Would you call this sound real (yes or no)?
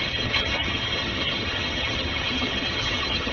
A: no